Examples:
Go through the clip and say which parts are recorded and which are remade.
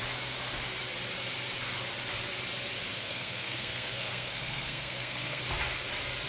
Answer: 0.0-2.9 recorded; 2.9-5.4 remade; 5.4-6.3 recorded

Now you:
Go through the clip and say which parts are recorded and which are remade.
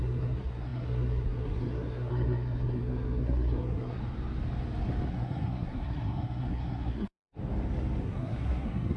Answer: 0.0-4.0 remade; 4.0-5.1 recorded; 5.1-7.4 remade; 7.4-8.0 recorded; 8.0-9.0 remade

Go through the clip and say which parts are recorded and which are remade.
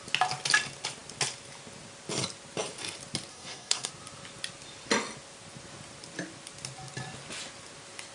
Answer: 0.0-3.3 recorded; 3.3-3.9 remade; 3.9-8.1 recorded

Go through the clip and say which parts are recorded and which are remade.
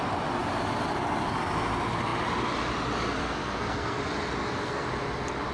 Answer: 0.0-3.2 recorded; 3.2-4.0 remade; 4.0-4.4 recorded; 4.4-4.9 remade; 4.9-5.5 recorded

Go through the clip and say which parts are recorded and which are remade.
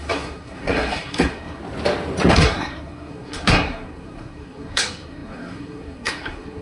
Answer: 0.0-1.6 remade; 1.6-2.3 recorded; 2.3-6.6 remade